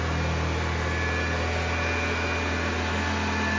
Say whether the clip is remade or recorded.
recorded